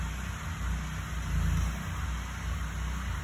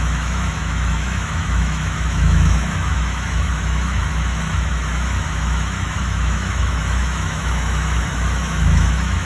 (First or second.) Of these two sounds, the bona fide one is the first